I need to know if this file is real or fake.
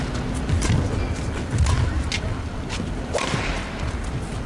real